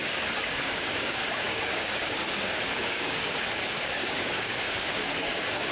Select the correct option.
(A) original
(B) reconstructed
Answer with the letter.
B